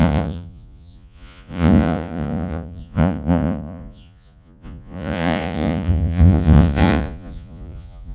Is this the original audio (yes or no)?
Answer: no